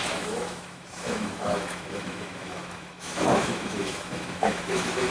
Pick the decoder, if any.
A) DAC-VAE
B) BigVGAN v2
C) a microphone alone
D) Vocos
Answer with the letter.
A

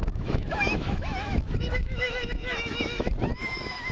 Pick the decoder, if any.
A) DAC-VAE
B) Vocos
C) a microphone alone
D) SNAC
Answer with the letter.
A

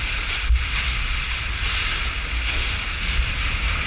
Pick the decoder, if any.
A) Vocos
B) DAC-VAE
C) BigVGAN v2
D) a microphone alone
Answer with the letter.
D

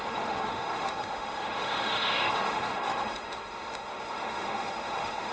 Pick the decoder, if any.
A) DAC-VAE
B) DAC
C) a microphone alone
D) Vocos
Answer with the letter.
A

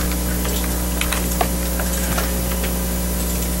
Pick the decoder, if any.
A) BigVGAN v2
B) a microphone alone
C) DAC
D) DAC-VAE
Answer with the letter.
B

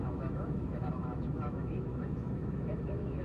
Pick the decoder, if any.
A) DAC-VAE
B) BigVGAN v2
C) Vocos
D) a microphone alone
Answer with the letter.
A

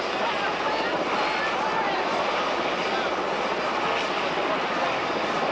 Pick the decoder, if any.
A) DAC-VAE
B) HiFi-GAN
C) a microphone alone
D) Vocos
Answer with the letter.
C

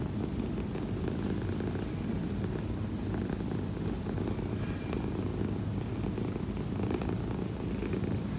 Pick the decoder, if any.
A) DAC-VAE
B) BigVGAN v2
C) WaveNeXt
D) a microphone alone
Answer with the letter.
D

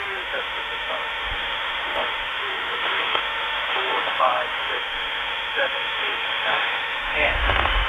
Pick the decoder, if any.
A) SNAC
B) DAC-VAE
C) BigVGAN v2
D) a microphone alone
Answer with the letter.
B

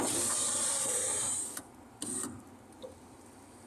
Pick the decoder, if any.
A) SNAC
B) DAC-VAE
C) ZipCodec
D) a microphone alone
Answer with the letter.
D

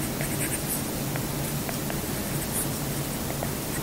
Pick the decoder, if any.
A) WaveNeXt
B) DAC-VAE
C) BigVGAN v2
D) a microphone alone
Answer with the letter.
D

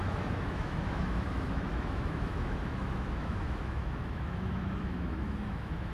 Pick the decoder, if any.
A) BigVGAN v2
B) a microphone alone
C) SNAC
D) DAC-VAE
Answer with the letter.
D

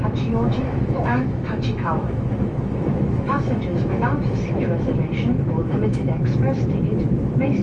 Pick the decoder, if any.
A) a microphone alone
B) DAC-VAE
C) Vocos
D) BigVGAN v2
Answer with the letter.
B